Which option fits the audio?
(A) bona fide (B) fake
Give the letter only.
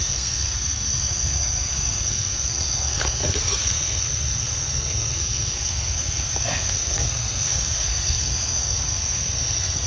B